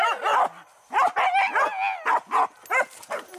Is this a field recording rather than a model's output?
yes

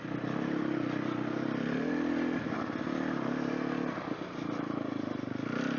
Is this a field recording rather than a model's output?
yes